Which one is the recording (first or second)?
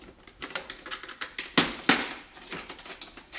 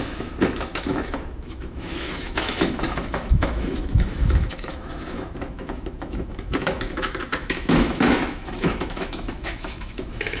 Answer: first